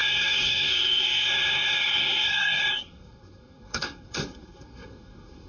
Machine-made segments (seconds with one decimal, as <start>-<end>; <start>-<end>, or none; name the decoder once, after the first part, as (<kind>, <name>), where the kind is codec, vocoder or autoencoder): 0.0-5.5 (codec, SNAC)